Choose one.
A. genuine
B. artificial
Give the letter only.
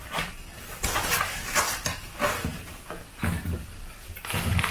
A